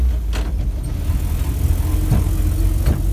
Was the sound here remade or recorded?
recorded